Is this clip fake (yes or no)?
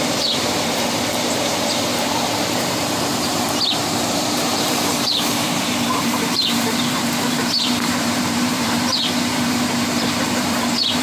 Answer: yes